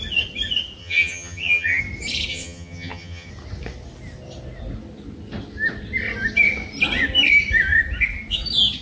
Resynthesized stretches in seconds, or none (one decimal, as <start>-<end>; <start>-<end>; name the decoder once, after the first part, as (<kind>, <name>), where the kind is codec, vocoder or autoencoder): 0.8-1.8 (vocoder, HiFi-GAN); 2.3-3.3